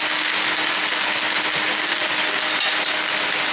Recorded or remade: recorded